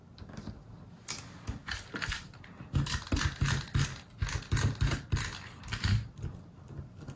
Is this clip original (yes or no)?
yes